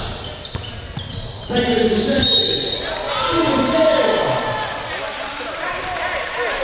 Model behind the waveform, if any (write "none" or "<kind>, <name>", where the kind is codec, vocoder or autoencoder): none